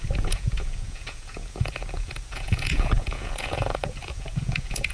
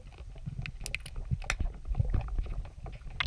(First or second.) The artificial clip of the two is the first